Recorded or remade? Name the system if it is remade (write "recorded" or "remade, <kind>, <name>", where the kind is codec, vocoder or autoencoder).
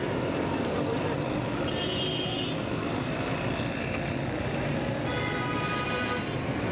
recorded